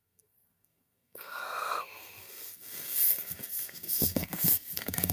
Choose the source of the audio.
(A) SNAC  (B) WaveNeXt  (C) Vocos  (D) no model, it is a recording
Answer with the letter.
A